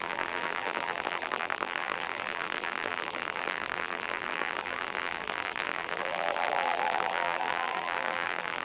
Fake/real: fake